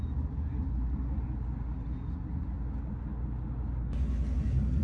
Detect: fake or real real